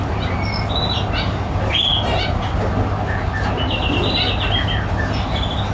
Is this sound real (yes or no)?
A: yes